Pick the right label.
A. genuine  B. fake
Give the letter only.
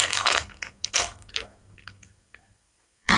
B